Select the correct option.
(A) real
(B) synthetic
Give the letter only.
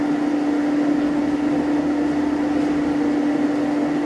A